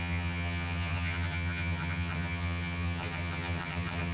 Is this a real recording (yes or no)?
no